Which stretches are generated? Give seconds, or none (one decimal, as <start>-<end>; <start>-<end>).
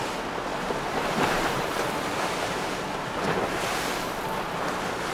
0.5-3.4